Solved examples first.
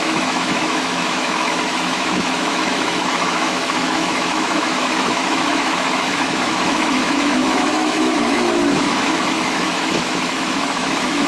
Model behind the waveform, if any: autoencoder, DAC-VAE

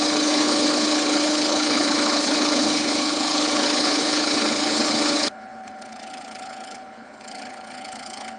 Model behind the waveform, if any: codec, HILCodec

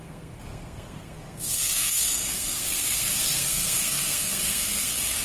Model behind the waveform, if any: codec, SNAC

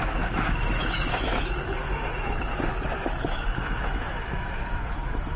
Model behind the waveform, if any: autoencoder, DAC-VAE